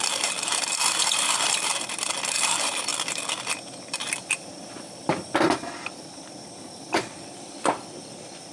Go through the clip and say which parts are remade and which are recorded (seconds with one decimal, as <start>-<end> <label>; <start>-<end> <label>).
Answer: 0.0-2.9 remade; 2.9-4.2 recorded; 4.2-8.5 remade